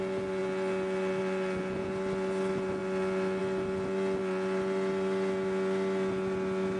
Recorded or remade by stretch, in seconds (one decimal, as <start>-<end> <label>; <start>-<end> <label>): 0.0-6.8 recorded